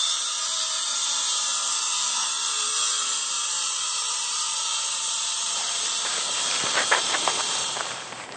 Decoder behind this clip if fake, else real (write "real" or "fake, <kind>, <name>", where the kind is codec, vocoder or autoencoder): fake, vocoder, BigVGAN v2